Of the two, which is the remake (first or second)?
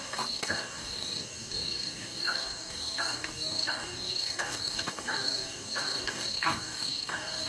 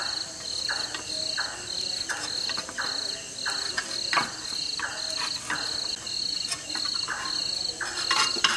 first